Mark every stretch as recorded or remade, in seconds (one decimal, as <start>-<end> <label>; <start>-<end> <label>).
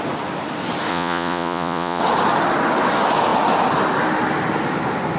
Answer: 0.0-0.9 recorded; 0.9-2.0 remade; 2.0-5.2 recorded